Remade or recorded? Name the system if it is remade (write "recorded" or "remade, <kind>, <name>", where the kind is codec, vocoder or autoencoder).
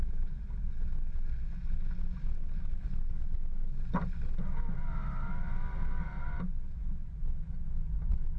recorded